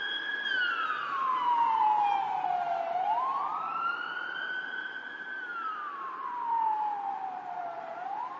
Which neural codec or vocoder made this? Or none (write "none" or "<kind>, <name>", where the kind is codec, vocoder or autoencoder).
vocoder, BigVGAN v2